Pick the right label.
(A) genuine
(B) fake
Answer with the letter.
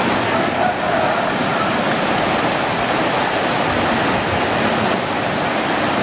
A